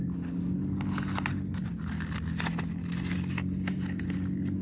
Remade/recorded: recorded